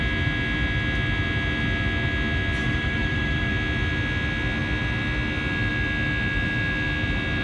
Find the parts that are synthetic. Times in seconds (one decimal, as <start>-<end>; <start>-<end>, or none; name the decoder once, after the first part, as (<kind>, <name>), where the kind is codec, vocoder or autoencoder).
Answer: 2.6-3.5 (autoencoder, DAC-VAE)